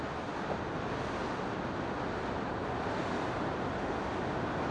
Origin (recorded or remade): recorded